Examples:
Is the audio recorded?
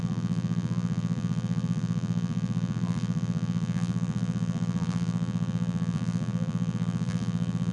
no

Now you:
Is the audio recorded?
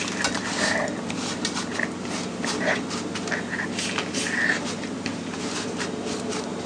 no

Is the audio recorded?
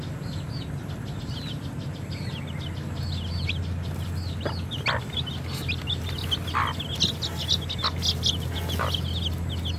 yes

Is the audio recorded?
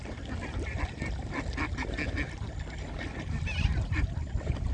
yes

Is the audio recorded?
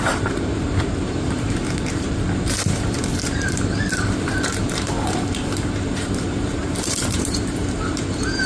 no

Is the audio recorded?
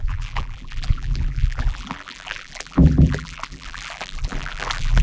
no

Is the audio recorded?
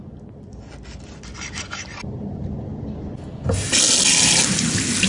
yes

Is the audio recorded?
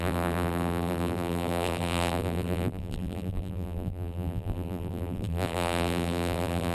no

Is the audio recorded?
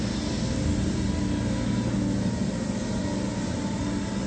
yes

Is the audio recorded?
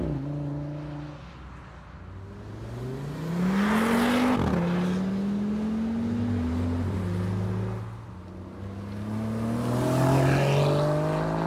yes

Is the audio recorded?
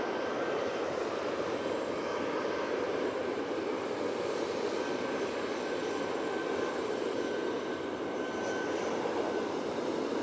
no